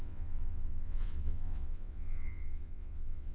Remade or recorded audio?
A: remade